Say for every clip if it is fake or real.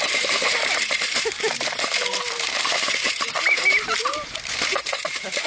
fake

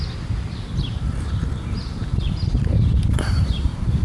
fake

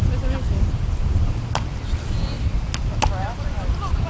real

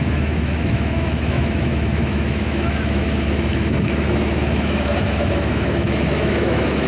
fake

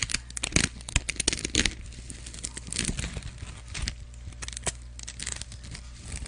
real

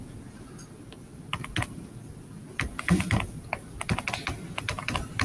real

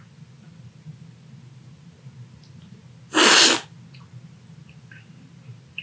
real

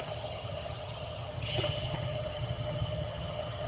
fake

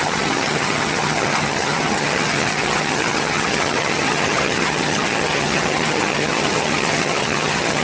fake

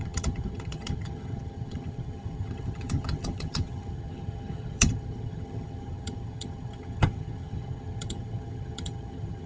fake